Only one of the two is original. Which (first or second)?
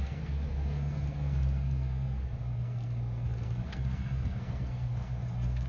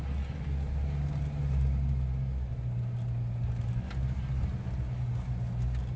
second